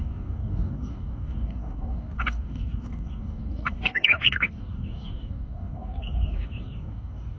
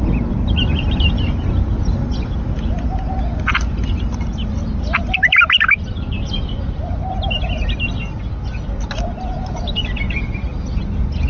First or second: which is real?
second